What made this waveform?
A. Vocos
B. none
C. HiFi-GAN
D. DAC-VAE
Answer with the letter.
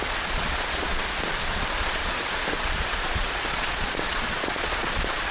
A